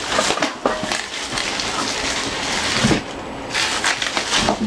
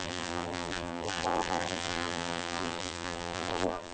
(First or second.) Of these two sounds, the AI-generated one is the second